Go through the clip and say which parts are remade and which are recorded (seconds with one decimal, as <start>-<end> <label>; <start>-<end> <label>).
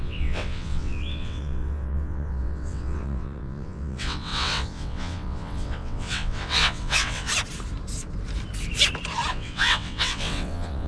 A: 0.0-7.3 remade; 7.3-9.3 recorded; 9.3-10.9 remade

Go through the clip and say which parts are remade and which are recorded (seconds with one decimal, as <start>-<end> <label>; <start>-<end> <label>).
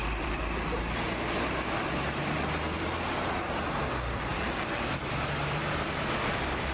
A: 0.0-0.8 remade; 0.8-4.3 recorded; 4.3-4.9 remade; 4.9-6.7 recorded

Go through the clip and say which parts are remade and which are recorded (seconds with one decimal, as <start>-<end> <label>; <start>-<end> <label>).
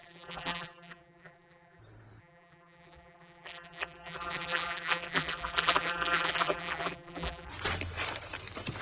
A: 0.0-1.8 remade; 1.8-2.2 recorded; 2.2-7.5 remade; 7.5-8.8 recorded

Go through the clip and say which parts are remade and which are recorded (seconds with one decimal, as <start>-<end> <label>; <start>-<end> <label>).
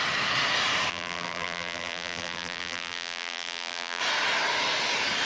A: 0.0-0.9 recorded; 0.9-4.0 remade; 4.0-5.2 recorded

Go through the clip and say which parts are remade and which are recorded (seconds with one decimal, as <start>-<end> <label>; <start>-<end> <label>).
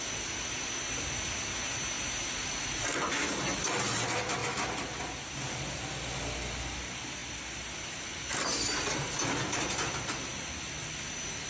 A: 0.0-11.5 recorded